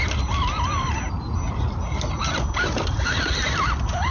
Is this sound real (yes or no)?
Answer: yes